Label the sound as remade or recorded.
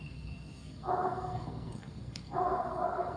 remade